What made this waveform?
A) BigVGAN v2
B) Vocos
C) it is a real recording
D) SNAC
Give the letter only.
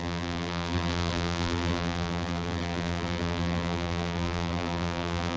A